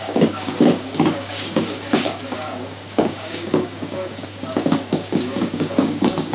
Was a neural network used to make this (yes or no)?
yes